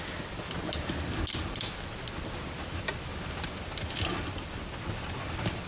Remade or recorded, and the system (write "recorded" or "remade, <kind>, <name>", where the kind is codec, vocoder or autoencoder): recorded